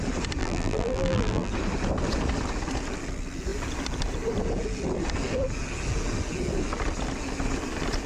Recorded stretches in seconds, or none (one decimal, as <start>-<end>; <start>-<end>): 0.0-0.4; 1.5-8.1